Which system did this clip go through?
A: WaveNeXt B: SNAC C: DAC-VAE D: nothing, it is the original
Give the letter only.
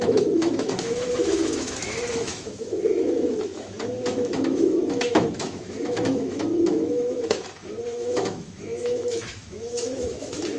C